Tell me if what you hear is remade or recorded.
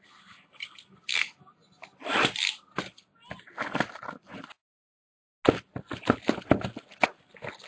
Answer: recorded